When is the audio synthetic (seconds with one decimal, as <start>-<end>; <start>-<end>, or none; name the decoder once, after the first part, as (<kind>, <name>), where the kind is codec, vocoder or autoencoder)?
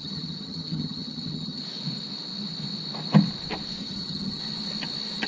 0.0-1.6 (vocoder, HiFi-GAN); 3.8-4.4